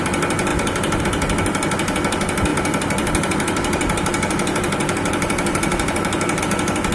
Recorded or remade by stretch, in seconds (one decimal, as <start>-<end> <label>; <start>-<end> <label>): 0.0-0.5 recorded; 0.5-1.0 remade; 1.0-2.5 recorded; 2.5-6.4 remade; 6.4-6.9 recorded